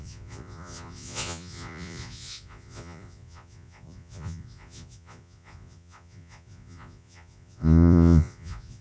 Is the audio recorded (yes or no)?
no